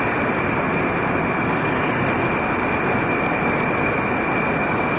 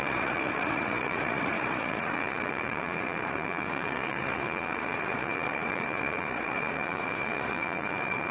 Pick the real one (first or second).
first